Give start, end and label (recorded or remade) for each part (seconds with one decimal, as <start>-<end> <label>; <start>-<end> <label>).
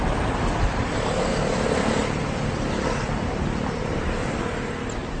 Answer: 0.0-1.3 recorded; 1.3-4.4 remade; 4.4-5.2 recorded